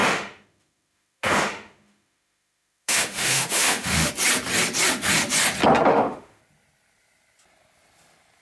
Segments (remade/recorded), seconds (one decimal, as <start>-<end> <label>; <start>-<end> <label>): 0.0-4.1 remade; 4.1-5.9 recorded; 5.9-6.4 remade; 6.4-8.4 recorded